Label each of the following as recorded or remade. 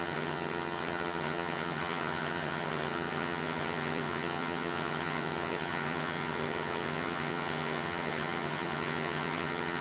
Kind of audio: remade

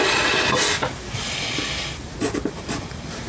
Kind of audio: recorded